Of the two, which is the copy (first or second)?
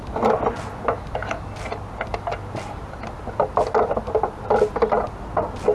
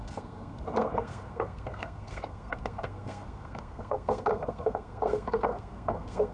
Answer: second